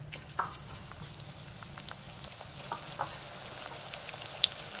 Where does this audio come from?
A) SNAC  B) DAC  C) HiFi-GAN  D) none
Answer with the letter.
D